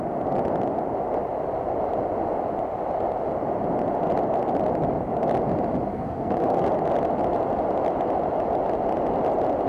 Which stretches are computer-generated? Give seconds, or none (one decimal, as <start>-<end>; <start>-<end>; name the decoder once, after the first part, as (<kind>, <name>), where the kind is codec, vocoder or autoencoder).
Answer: 5.9-6.7 (codec, SNAC)